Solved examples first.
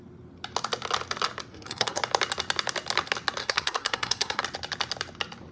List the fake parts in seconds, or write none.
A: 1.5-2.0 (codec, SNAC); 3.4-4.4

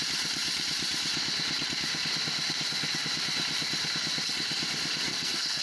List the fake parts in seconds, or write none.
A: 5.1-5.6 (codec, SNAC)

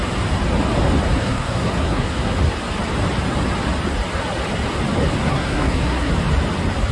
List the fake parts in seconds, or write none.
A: 1.2-2.3 (codec, SNAC); 5.2-6.1

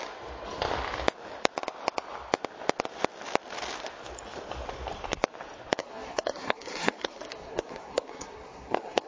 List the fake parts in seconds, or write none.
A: 5.8-9.1 (codec, SNAC)

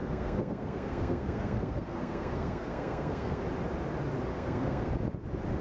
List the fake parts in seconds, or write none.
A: 0.0-3.4 (codec, SNAC); 4.3-4.9

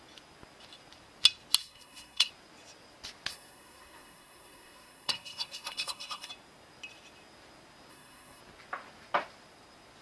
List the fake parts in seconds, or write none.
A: 1.6-2.3 (codec, SNAC); 3.3-6.3; 7.9-8.4